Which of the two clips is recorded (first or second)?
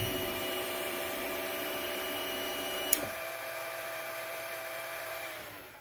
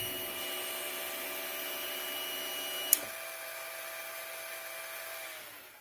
second